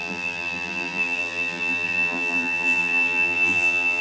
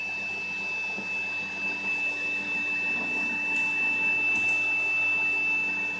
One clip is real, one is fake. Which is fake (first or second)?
first